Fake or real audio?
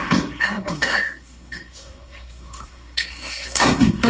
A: fake